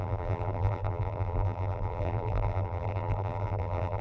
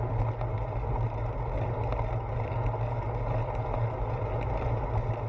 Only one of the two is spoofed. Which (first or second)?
first